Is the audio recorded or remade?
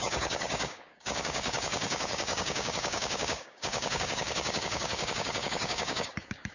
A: remade